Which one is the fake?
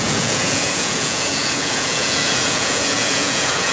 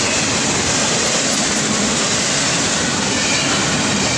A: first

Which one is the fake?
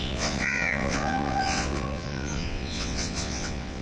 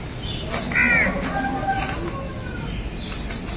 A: first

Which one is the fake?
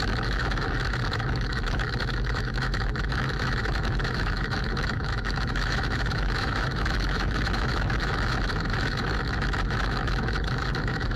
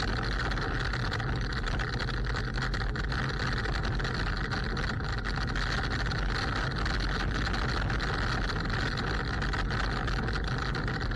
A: first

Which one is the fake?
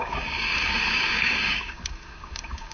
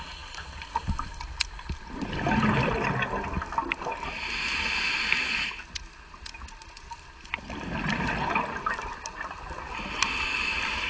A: first